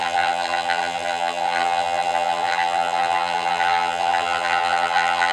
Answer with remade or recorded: remade